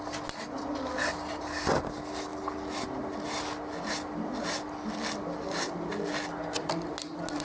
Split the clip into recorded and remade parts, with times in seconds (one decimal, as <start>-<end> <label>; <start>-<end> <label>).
0.0-7.4 recorded